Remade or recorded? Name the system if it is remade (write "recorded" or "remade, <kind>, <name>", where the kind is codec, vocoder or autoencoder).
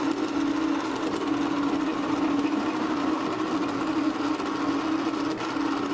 recorded